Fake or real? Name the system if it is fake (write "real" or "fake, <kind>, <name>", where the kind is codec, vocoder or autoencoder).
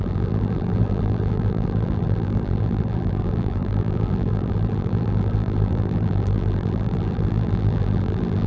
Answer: fake, vocoder, BigVGAN v2